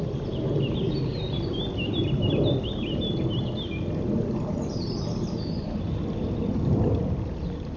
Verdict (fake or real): real